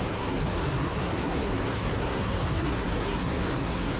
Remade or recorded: remade